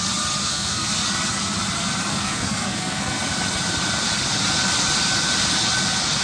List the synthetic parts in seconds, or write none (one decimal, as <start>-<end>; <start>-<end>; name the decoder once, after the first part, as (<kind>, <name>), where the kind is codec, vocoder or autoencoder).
0.4-0.9 (codec, SNAC); 2.1-3.2